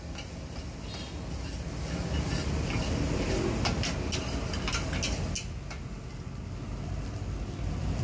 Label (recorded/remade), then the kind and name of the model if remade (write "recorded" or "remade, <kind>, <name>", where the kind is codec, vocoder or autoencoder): recorded